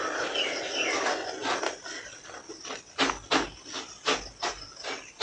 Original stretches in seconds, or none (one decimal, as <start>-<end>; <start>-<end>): 0.0-5.2